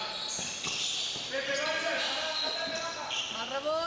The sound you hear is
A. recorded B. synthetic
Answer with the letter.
A